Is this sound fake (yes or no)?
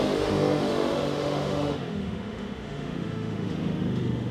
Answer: yes